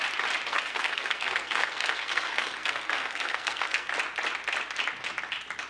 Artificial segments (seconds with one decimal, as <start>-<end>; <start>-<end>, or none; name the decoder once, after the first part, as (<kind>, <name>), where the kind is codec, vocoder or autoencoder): 0.5-3.9 (codec, SNAC)